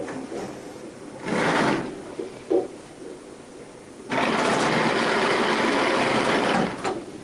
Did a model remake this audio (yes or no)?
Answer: no